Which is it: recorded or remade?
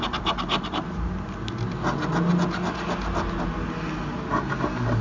recorded